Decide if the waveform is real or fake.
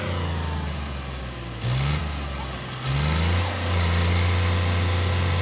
real